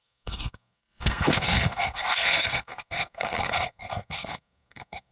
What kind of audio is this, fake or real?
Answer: fake